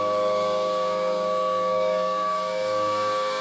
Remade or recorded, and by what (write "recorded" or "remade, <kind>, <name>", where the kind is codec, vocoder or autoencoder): remade, codec, DAC